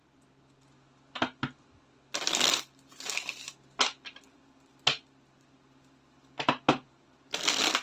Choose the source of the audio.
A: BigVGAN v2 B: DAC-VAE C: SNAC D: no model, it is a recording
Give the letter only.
D